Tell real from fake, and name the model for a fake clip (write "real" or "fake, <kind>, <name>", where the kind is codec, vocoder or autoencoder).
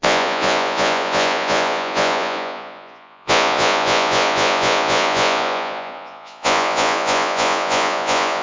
fake, vocoder, Vocos